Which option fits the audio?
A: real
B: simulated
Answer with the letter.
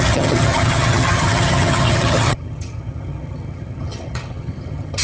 B